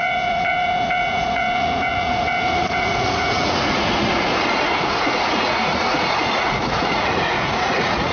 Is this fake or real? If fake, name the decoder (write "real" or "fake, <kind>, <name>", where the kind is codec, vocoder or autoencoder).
fake, vocoder, Vocos